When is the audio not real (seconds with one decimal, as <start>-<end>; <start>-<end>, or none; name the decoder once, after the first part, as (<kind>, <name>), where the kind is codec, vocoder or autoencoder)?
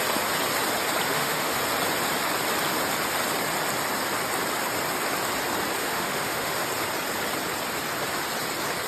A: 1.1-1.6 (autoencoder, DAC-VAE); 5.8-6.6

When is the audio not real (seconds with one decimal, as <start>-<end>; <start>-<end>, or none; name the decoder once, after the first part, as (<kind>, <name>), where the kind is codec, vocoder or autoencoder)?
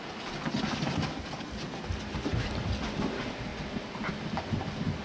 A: none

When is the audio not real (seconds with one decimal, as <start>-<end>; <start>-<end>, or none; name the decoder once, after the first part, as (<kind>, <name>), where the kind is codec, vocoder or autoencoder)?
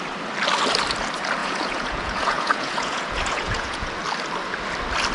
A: 1.4-3.9 (vocoder, Vocos)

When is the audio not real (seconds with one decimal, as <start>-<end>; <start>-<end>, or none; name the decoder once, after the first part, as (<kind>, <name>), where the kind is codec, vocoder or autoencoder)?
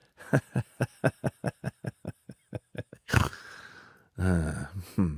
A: 2.9-3.4 (codec, SNAC)